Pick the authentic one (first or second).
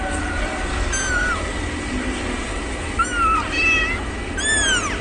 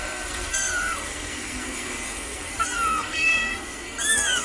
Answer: first